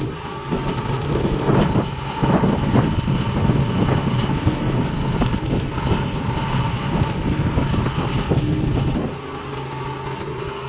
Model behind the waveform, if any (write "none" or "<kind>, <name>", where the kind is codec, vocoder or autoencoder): none